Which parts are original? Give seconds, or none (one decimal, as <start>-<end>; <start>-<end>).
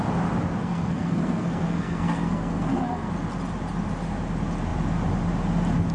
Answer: 0.0-0.6; 3.1-5.9